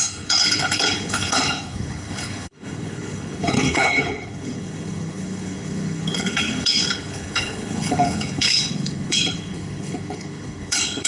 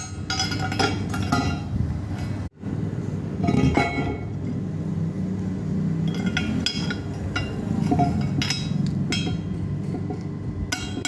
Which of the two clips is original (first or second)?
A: second